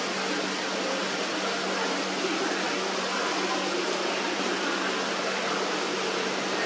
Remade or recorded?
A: recorded